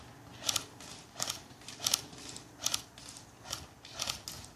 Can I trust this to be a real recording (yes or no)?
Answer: yes